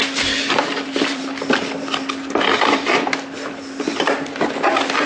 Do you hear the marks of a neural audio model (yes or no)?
yes